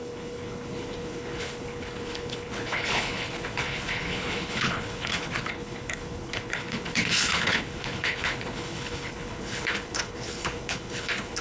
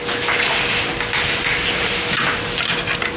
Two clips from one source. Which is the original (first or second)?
second